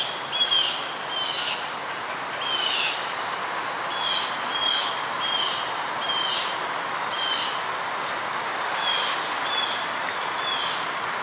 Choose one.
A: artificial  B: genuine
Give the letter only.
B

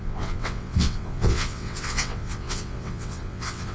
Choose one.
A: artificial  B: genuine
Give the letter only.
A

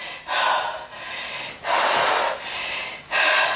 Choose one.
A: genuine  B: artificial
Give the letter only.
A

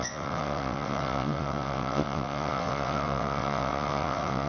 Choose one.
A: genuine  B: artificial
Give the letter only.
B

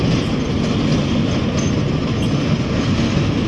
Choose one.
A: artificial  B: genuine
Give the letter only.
B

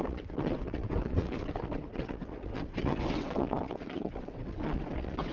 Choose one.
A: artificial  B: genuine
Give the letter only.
A